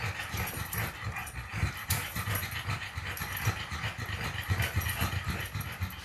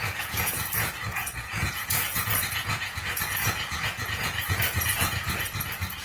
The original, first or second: first